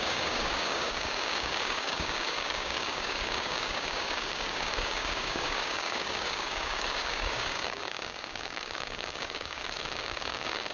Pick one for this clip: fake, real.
fake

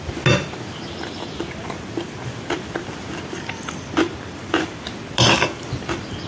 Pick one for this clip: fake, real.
real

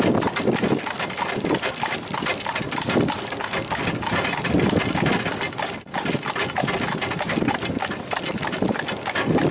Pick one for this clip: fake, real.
real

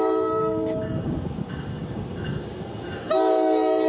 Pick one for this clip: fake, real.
fake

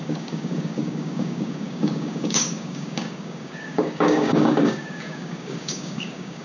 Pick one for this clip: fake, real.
fake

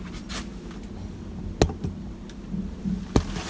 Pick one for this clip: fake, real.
real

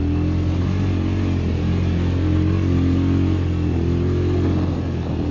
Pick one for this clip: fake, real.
real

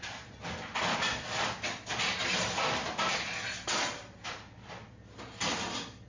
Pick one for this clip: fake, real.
real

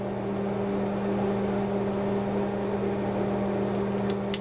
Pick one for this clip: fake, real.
real